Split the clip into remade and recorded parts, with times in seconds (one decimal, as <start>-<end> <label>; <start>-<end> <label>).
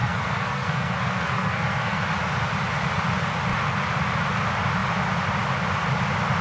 0.0-2.0 remade; 2.0-6.4 recorded